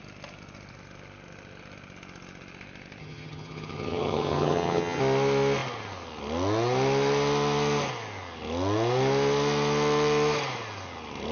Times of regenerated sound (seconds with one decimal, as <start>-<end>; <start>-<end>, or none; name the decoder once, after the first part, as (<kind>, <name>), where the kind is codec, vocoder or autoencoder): 3.0-5.0 (vocoder, HiFi-GAN)